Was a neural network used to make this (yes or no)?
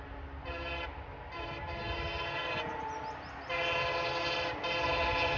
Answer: no